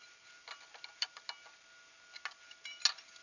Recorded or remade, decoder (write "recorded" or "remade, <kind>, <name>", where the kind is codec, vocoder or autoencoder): recorded